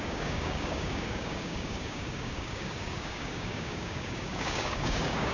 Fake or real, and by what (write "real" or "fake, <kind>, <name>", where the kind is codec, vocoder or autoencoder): fake, codec, DAC